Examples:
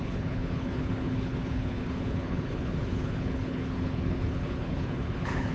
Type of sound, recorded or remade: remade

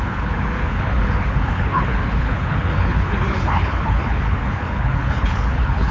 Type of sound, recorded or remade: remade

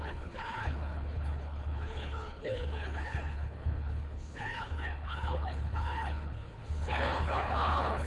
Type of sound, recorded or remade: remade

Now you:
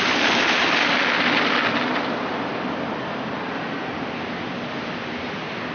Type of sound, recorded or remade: recorded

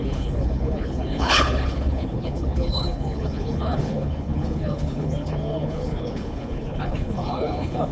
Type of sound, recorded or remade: remade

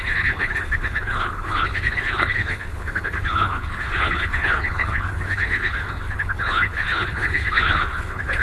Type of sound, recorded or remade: remade